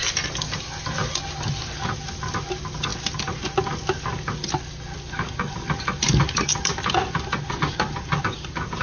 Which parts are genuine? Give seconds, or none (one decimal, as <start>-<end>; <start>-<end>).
0.0-8.8